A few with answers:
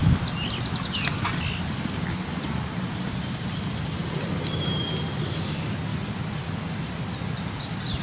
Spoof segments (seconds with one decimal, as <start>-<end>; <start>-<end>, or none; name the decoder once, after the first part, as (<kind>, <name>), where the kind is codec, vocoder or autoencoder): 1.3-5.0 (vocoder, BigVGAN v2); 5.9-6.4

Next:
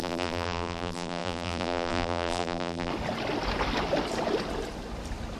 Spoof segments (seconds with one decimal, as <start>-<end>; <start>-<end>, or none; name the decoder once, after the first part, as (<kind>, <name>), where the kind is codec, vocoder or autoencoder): 0.0-2.9 (vocoder, BigVGAN v2)

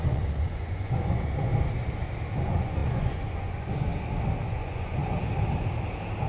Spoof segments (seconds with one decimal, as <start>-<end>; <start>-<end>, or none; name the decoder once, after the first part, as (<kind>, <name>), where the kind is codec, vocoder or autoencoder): 0.0-1.5 (vocoder, Vocos); 2.4-3.9; 4.5-5.0

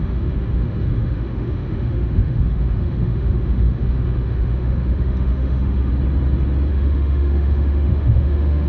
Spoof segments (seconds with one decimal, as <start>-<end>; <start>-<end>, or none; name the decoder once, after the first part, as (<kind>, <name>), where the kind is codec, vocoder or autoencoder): 0.0-5.9 (autoencoder, DAC-VAE); 6.7-8.7

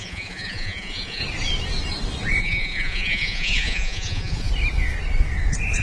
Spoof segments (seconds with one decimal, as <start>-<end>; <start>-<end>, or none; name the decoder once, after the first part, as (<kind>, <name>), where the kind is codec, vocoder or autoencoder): 0.0-1.2 (vocoder, Vocos); 2.4-4.5

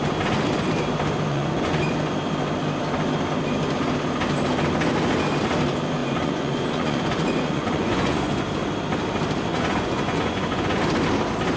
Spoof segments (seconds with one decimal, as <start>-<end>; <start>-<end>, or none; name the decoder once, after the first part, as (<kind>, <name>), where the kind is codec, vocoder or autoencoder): 1.3-1.8 (vocoder, Vocos); 6.0-8.4; 9.5-10.8

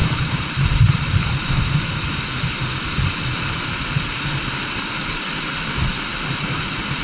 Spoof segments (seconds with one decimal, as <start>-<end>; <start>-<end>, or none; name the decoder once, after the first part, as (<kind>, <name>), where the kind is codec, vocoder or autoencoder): 0.0-1.2 (vocoder, BigVGAN v2)

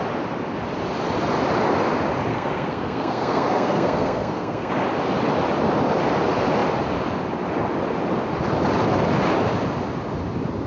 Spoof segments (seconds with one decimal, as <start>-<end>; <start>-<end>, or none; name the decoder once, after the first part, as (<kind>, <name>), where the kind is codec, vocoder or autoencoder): 2.3-4.7 (codec, SNAC)